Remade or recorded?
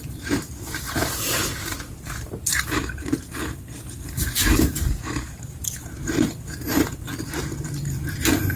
remade